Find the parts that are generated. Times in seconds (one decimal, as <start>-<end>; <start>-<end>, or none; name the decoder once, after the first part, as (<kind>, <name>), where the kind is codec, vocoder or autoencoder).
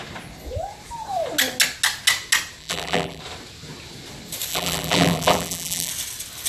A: 2.6-3.2 (vocoder, BigVGAN v2); 4.5-5.9